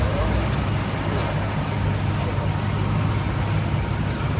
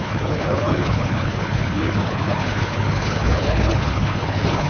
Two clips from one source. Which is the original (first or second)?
first